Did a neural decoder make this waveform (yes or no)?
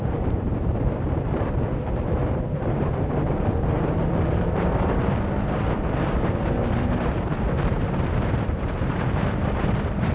yes